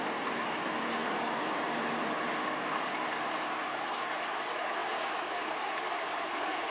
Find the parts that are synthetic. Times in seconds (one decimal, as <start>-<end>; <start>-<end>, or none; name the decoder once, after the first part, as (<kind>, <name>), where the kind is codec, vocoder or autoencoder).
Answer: none